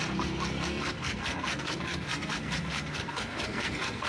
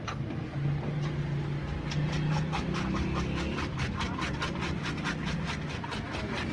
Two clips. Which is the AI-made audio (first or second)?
first